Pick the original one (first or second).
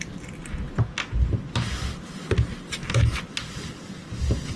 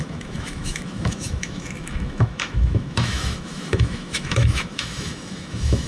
first